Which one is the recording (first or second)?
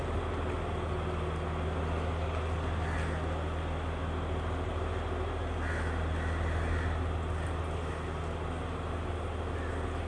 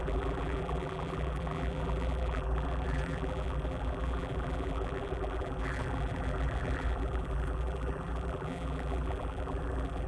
first